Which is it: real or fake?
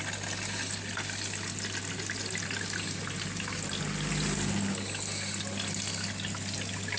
real